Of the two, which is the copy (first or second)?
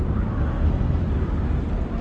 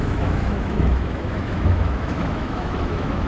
second